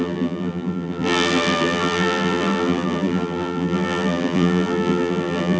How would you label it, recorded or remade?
remade